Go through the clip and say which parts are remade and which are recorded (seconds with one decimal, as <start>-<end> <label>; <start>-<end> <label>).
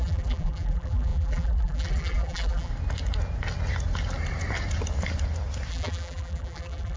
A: 0.0-2.7 remade; 2.7-5.7 recorded; 5.7-7.0 remade